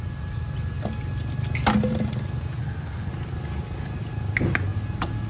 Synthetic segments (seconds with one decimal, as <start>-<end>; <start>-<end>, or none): 2.6-3.1